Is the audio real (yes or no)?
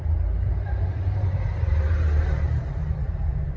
no